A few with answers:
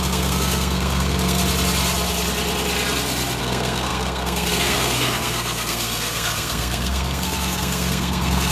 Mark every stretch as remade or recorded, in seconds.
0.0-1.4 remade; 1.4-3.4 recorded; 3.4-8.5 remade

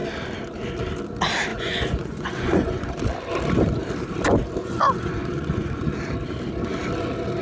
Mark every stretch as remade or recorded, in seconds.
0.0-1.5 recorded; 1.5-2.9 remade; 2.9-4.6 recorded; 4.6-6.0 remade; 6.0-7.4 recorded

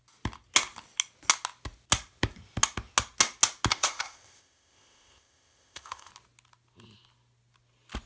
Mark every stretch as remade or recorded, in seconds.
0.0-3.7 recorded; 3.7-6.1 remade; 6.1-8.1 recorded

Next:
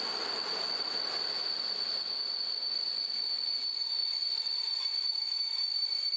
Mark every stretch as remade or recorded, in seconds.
0.0-6.2 recorded

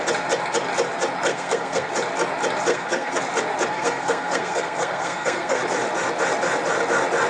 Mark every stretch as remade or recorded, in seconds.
0.0-1.3 recorded; 1.3-1.9 remade; 1.9-2.7 recorded; 2.7-3.2 remade; 3.2-3.7 recorded; 3.7-5.6 remade; 5.6-7.3 recorded